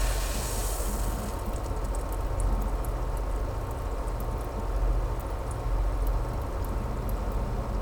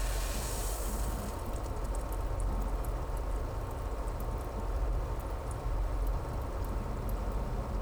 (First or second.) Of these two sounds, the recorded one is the first